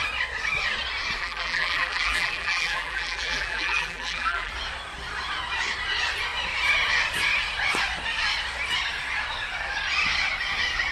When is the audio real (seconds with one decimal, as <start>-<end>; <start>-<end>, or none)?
0.0-1.2; 4.5-10.9